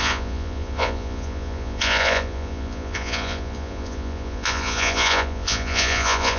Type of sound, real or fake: fake